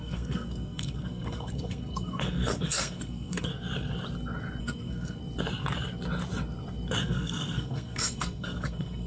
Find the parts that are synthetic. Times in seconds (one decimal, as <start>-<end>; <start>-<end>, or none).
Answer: 0.0-3.5; 4.6-5.2; 7.0-9.1